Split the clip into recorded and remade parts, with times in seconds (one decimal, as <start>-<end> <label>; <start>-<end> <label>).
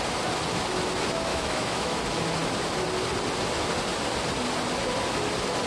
0.0-1.3 recorded; 1.3-2.0 remade; 2.0-5.7 recorded